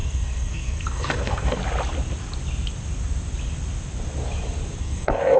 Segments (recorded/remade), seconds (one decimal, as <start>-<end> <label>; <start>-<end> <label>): 0.0-1.6 remade; 1.6-4.8 recorded; 4.8-5.4 remade